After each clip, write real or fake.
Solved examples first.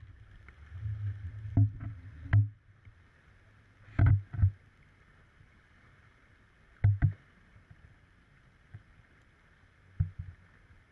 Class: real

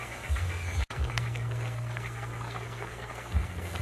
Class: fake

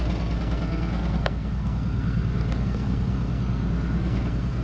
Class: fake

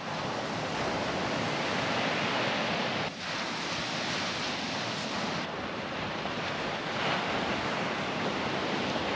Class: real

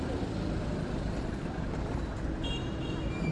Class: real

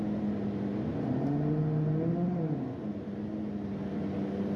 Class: real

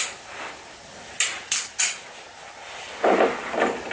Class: real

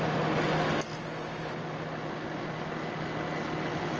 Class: real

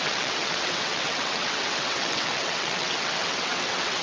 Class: fake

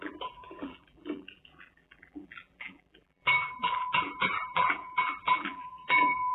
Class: fake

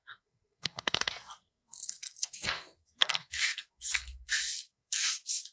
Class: fake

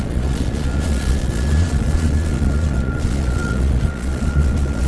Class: fake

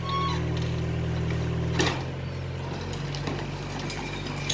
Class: real